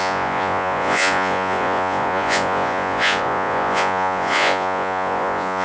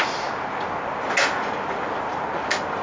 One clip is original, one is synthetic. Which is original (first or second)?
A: second